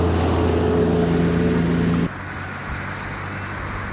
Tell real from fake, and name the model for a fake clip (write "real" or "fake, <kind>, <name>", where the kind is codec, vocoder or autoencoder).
real